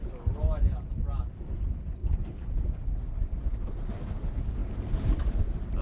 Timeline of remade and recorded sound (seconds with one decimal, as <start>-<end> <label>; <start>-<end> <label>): 0.0-5.8 recorded